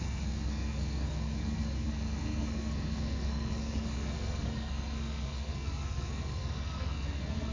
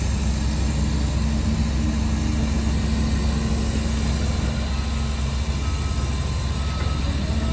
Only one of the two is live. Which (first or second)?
second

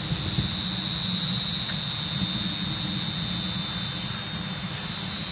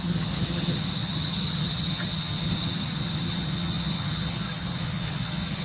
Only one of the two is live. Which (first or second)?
first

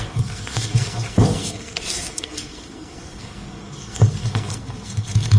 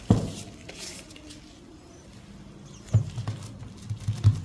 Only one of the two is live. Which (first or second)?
second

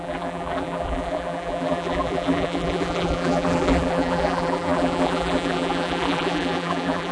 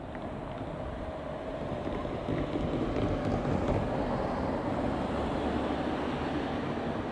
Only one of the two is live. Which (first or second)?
second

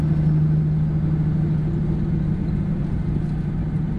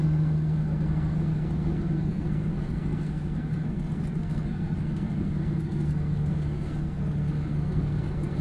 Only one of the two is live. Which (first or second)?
first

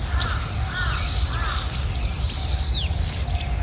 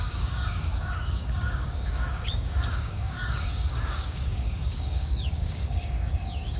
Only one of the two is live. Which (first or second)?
first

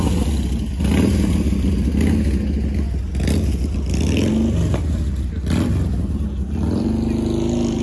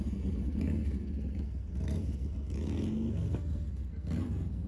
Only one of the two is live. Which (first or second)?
first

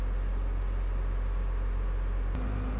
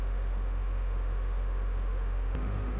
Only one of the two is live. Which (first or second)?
first